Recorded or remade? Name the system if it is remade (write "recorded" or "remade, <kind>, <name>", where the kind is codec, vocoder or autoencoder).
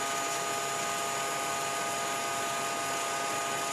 recorded